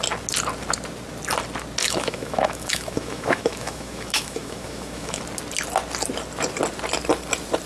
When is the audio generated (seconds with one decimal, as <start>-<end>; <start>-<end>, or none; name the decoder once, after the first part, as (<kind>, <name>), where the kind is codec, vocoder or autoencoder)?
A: 1.8-5.2 (autoencoder, DAC-VAE)